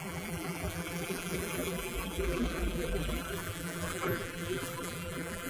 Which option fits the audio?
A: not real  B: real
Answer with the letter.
A